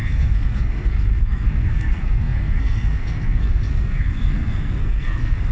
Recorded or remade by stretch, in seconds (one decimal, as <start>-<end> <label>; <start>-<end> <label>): 0.0-5.5 remade